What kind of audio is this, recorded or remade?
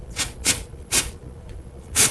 remade